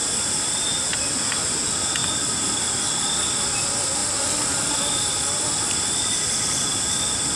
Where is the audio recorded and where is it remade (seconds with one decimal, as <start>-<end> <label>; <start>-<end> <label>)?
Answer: 0.0-0.7 recorded; 0.7-1.2 remade; 1.2-7.4 recorded